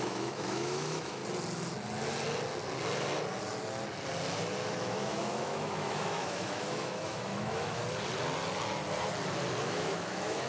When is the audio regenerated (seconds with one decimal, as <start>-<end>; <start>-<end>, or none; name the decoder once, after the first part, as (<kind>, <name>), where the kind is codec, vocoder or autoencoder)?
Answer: 0.0-1.2 (autoencoder, DAC-VAE); 4.7-7.8; 9.6-10.5